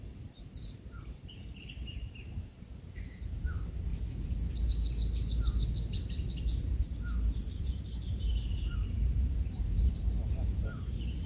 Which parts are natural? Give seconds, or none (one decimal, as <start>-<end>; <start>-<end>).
3.9-7.6